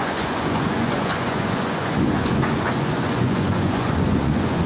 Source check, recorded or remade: remade